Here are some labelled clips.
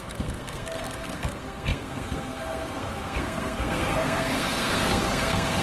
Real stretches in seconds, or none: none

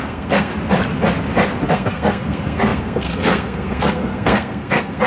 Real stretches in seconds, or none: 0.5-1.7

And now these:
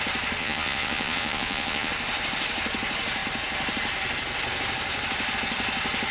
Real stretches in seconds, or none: 0.0-0.4; 1.9-6.1

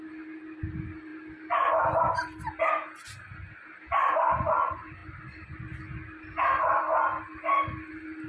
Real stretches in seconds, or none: 0.0-8.3

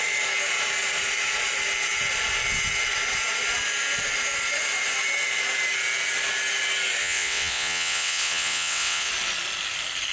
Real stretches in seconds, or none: 0.0-7.0; 9.1-10.1

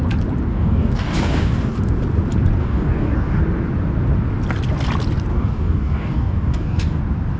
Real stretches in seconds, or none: 0.0-0.5; 1.8-2.6; 3.4-5.3; 7.0-7.4

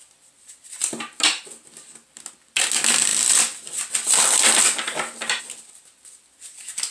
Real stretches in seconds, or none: 0.0-0.8; 2.3-3.1; 5.4-6.9

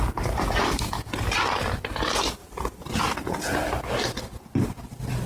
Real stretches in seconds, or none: 0.0-5.3